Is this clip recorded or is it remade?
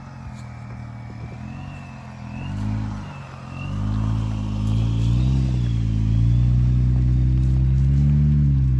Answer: recorded